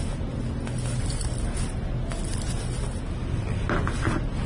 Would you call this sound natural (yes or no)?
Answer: yes